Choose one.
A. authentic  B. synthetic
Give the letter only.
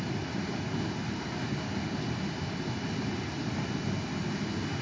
A